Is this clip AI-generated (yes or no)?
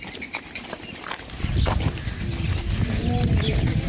no